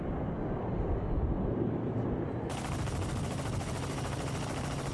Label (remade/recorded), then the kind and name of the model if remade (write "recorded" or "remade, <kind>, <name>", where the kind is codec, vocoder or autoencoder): recorded